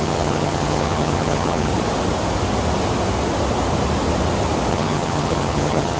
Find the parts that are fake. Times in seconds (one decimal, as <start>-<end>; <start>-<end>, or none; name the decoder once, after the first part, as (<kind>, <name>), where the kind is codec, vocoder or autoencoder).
0.0-1.7 (vocoder, HiFi-GAN); 4.7-6.0